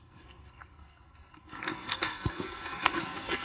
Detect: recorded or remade remade